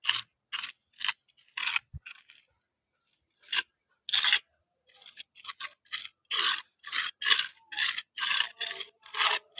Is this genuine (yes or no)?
yes